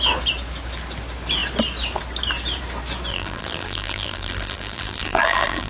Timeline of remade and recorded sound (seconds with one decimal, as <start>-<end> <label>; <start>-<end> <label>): 0.0-3.1 recorded; 3.1-5.7 remade